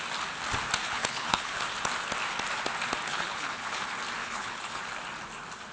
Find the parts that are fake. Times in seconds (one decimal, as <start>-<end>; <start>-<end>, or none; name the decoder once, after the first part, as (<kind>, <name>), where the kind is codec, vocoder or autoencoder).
0.8-1.6 (codec, HILCodec); 3.1-3.8; 4.2-4.8